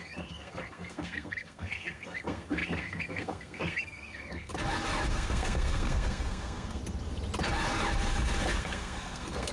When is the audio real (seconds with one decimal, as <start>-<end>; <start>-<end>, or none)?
4.5-5.1; 6.8-8.6